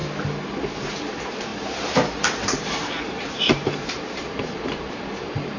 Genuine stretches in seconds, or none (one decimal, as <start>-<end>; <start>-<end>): 0.0-0.9

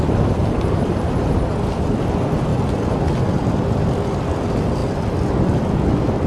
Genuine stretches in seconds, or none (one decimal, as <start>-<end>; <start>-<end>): 0.0-0.4; 1.5-6.3

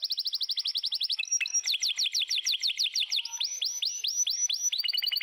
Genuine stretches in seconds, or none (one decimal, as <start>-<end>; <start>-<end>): 0.0-0.7; 3.8-5.2

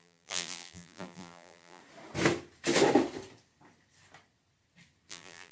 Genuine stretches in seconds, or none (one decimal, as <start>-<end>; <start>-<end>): 1.8-5.1

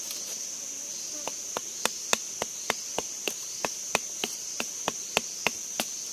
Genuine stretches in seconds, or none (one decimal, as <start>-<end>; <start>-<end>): 0.0-1.6; 4.7-6.1

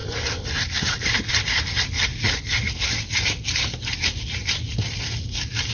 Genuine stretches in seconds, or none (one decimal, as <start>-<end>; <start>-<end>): 2.1-5.7